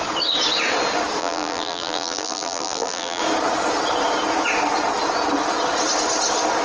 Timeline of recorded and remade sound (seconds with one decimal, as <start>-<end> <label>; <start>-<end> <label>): 0.0-1.2 recorded; 1.2-3.2 remade; 3.2-6.6 recorded